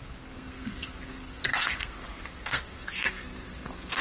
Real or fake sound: fake